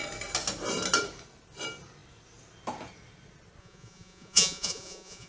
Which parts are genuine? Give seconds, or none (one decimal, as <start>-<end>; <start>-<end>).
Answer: 0.0-3.6